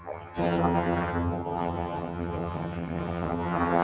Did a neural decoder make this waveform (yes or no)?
yes